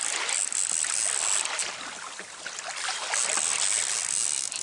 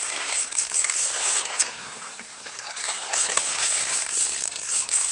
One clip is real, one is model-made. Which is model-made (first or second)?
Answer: second